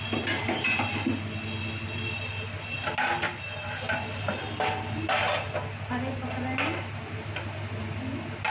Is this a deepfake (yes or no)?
no